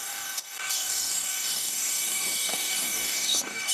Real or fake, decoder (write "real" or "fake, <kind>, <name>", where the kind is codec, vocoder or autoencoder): fake, codec, DAC